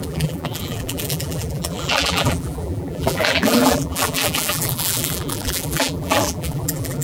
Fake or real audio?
fake